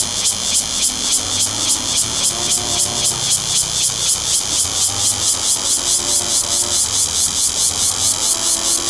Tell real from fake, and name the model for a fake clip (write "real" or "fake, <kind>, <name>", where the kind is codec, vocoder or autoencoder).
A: real